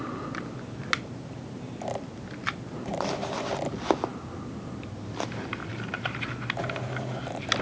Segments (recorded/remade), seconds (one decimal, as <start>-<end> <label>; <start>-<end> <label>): 0.0-7.6 recorded